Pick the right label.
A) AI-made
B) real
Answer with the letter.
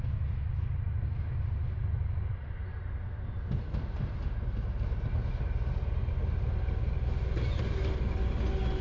B